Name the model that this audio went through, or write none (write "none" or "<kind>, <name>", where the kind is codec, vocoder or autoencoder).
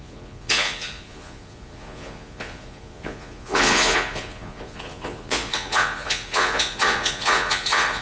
vocoder, Vocos